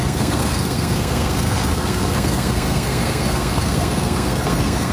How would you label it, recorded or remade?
remade